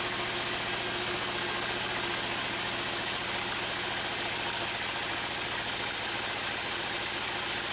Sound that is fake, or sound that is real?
real